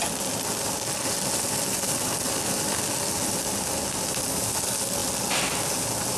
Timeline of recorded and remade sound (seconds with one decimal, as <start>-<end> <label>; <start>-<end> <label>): 0.0-6.2 recorded